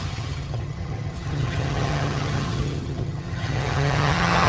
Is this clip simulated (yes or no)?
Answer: yes